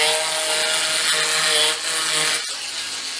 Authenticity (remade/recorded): recorded